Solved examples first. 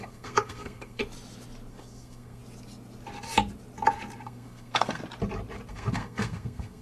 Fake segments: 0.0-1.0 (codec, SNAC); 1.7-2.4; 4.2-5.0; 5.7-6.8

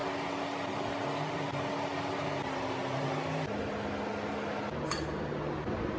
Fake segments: none

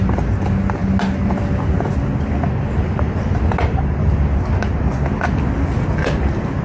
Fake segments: none